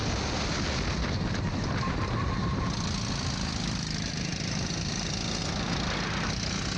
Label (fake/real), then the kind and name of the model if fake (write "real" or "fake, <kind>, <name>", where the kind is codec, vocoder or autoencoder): real